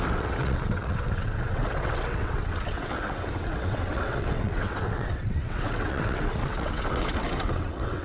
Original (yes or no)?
no